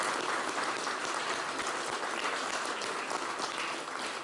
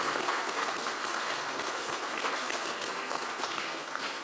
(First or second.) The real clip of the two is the first